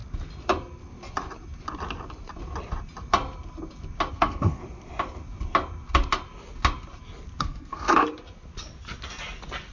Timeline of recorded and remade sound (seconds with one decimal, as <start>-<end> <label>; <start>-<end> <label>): 0.0-4.1 recorded; 4.1-4.6 remade; 4.6-7.4 recorded; 7.4-8.0 remade; 8.0-9.7 recorded